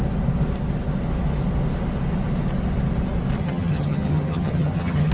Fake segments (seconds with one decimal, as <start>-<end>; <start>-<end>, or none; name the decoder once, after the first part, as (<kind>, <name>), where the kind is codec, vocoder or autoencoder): 3.4-5.1 (vocoder, HiFi-GAN)